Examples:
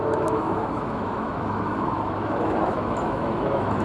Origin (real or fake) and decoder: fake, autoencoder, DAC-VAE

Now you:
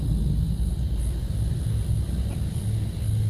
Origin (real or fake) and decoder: real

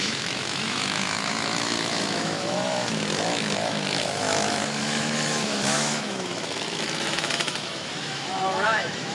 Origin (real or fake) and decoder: fake, autoencoder, DAC-VAE